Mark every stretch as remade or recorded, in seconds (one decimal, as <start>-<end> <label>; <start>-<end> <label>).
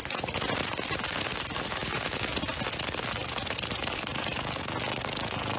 0.0-5.6 recorded